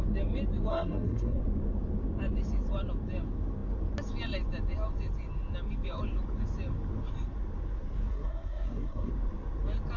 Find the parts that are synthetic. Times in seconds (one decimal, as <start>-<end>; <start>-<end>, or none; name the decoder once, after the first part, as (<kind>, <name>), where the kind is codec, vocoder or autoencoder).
0.7-1.4 (codec, SNAC); 8.1-9.1

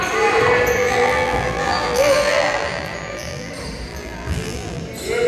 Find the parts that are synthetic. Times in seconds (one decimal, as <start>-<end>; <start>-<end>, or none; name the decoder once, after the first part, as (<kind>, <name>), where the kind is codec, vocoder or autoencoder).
0.8-3.5 (vocoder, BigVGAN v2); 3.9-4.8